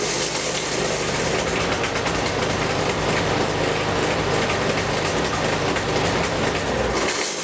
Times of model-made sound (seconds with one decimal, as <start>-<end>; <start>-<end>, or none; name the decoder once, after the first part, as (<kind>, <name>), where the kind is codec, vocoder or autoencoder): none